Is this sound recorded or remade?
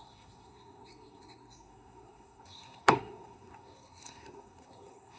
remade